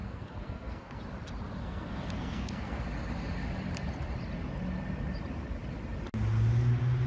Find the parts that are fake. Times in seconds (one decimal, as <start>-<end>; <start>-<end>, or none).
0.0-1.0; 1.6-2.8